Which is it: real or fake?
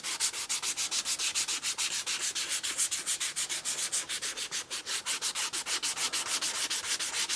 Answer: real